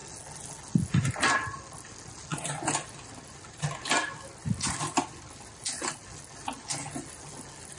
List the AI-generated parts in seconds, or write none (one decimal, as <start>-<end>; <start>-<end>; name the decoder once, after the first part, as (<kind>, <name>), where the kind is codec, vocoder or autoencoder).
none